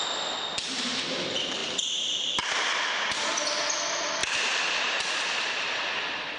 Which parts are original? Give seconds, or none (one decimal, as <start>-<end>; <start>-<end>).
0.0-1.6; 2.9-4.2; 5.8-6.4